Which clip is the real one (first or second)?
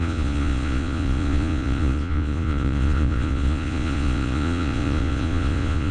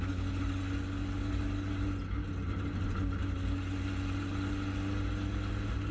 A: second